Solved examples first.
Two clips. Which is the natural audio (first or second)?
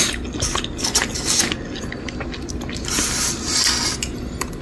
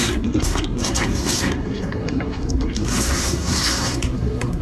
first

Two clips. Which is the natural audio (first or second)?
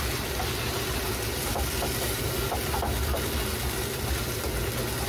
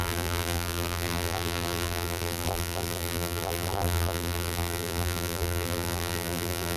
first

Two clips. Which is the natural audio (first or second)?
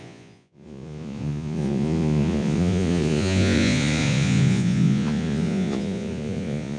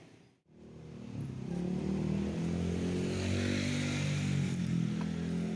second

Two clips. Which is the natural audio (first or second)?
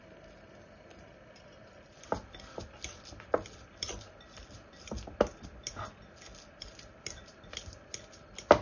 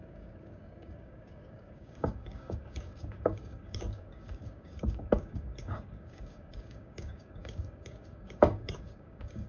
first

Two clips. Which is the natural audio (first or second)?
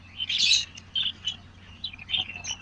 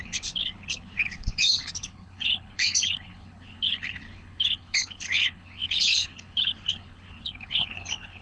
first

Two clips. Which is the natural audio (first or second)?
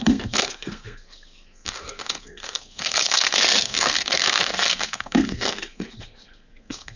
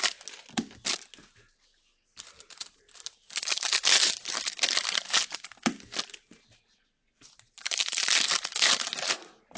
second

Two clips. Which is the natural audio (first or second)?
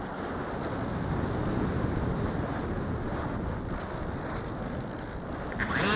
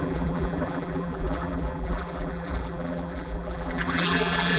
first